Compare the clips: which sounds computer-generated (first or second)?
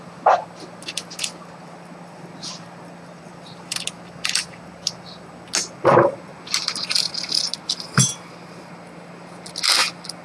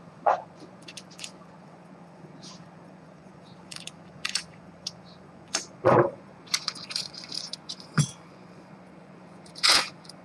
second